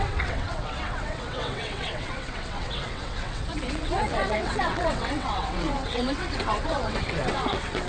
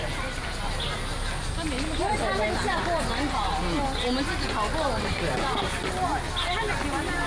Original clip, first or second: second